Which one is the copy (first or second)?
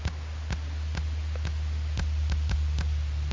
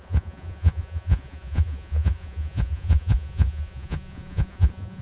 second